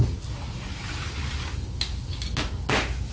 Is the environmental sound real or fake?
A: real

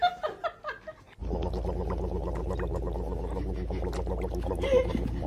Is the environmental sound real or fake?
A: real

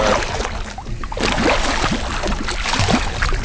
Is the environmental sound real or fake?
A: real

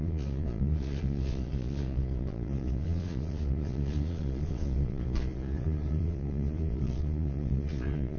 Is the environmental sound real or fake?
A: fake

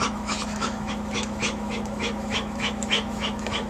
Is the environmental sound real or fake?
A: fake